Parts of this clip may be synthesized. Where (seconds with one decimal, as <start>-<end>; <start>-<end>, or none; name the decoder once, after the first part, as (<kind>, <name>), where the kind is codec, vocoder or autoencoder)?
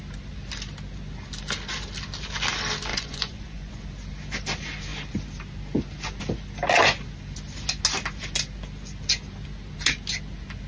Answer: 2.9-3.8 (vocoder, Vocos)